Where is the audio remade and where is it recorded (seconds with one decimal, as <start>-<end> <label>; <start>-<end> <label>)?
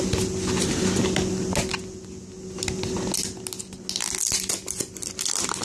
0.0-5.6 recorded